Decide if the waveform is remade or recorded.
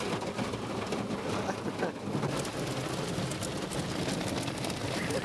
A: recorded